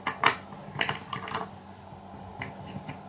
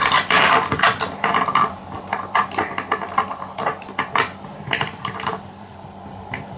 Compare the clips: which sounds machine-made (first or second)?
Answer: second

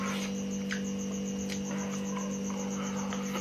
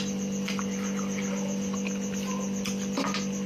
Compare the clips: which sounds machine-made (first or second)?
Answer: second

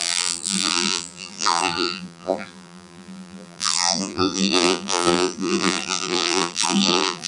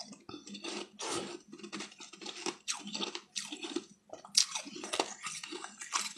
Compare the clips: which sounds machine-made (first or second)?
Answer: first